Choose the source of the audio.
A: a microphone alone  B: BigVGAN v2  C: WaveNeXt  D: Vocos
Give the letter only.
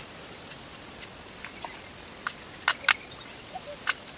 A